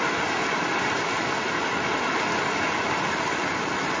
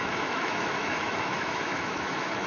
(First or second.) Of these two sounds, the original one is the first